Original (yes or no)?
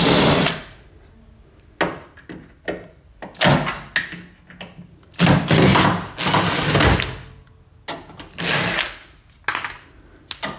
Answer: yes